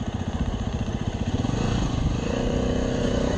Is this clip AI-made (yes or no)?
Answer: yes